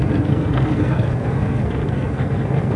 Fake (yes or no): yes